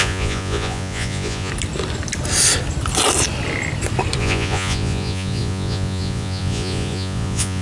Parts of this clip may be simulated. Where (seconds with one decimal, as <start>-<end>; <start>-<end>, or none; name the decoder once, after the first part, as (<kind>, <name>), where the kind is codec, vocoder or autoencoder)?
0.0-1.5 (vocoder, Vocos); 4.2-7.6